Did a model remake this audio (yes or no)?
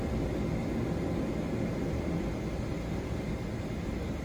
no